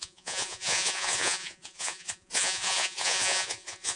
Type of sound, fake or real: fake